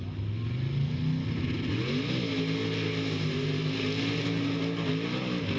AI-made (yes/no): no